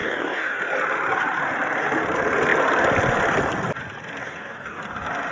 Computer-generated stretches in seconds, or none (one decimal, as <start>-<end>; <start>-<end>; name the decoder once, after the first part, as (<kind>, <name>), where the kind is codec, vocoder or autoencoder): 0.0-0.6 (codec, DAC); 4.2-4.8